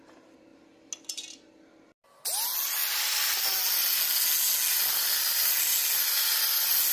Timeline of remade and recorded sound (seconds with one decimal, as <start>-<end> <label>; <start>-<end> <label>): 0.0-6.9 recorded